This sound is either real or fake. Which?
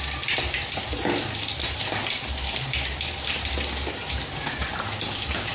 fake